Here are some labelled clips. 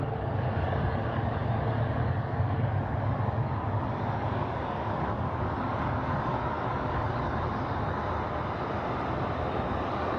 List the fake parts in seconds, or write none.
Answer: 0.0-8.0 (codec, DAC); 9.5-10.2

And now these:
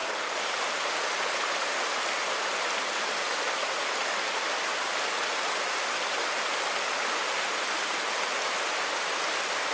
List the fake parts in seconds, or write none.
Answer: none

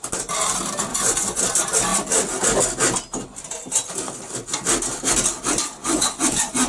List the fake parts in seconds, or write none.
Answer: 0.9-1.4 (vocoder, Vocos); 5.8-6.7

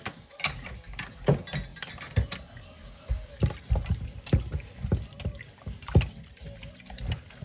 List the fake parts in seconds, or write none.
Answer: none

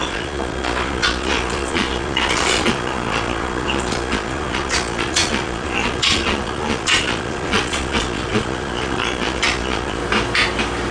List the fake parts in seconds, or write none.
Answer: 0.0-10.0 (vocoder, Vocos)

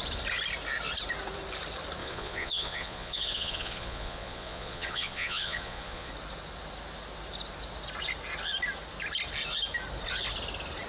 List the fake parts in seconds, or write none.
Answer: 2.0-6.1 (vocoder, Vocos)

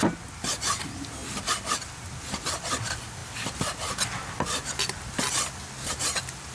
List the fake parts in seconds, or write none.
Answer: none